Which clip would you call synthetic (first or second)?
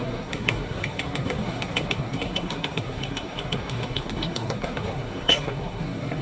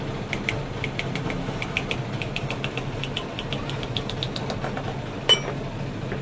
first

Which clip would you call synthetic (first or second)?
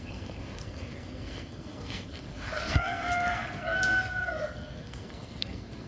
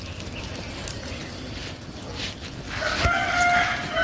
first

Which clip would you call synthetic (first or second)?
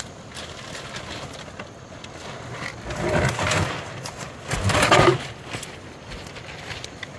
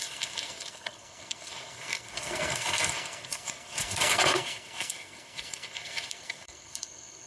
second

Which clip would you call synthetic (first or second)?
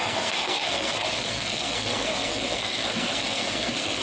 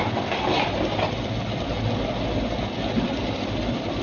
first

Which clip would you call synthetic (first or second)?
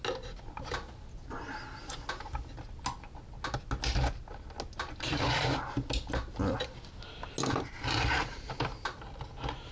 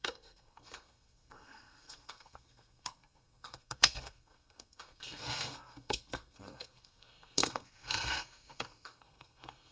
second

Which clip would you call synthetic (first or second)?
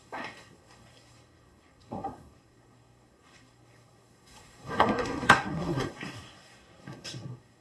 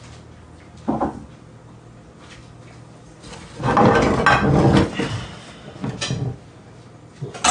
first